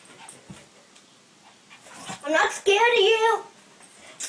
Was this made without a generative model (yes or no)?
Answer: yes